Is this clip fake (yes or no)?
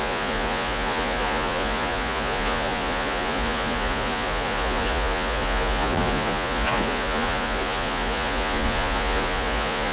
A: yes